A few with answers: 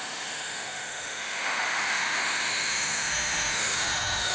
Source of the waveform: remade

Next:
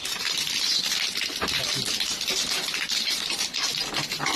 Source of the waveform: recorded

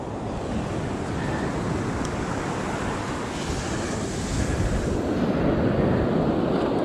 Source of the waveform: recorded